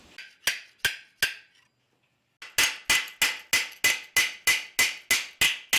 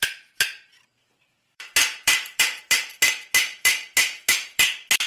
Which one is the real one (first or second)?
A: first